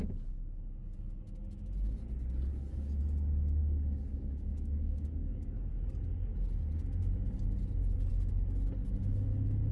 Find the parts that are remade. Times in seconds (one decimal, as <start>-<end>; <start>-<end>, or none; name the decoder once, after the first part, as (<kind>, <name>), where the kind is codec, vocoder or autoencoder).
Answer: 2.5-3.0 (codec, DAC); 3.6-5.7